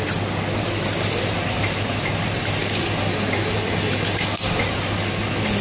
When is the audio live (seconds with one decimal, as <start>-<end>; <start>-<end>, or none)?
2.6-5.6